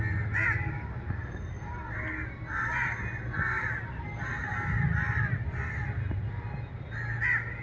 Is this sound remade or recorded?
recorded